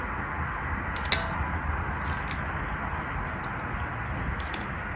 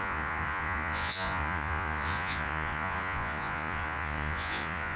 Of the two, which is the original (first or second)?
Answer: first